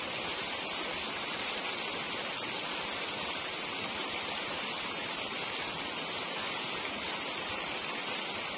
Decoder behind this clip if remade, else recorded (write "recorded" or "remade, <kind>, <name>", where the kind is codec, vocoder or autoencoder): recorded